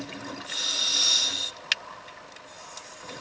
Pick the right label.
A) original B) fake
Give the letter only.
A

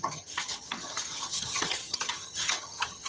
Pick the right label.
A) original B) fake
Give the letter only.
B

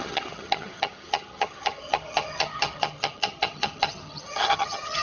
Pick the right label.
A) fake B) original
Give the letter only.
A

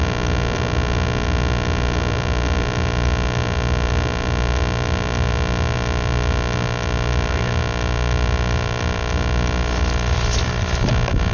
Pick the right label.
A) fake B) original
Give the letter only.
B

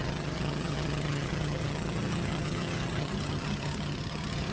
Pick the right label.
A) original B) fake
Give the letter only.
B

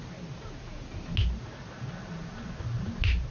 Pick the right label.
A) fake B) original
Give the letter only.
B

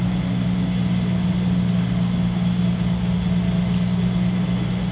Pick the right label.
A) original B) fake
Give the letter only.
A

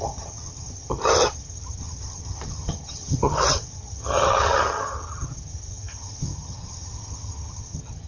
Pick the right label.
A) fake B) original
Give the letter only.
A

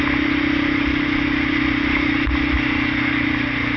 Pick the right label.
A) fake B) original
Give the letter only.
B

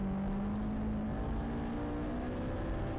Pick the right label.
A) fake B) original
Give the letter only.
B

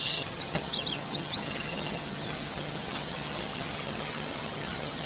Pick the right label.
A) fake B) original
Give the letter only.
A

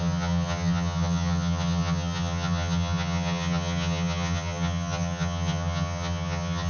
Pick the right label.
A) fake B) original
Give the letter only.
A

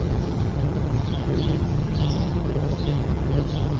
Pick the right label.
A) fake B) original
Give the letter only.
A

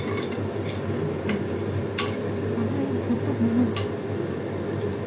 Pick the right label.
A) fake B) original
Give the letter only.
B